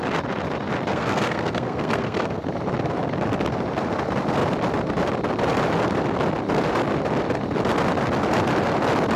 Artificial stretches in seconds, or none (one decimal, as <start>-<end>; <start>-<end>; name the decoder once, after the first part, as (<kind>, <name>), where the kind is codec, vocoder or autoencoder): 0.9-2.4 (codec, SNAC)